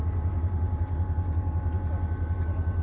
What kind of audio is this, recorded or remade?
recorded